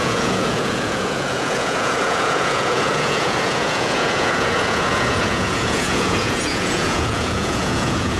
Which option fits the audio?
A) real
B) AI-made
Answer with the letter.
B